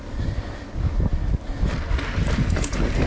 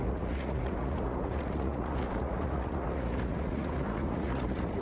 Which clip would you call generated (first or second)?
second